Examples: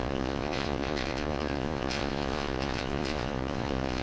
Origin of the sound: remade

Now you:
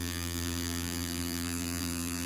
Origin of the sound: remade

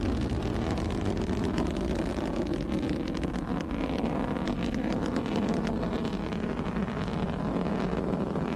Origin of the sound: recorded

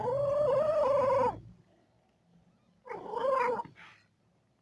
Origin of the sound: recorded